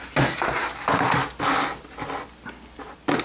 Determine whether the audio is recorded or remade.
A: recorded